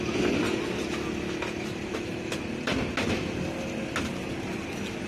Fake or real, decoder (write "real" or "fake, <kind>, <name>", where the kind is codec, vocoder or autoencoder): real